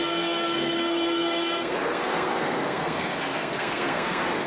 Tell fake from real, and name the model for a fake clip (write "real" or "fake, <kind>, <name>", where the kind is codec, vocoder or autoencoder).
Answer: fake, codec, SNAC